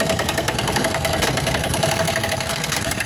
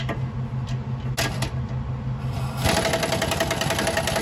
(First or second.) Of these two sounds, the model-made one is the first